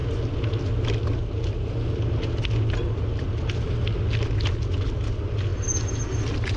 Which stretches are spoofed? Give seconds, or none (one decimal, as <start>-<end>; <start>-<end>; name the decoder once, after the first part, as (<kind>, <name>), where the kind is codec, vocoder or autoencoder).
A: none